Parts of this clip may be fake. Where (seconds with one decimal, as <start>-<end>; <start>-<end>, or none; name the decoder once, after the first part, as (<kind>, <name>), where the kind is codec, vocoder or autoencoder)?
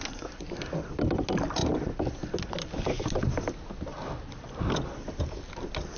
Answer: none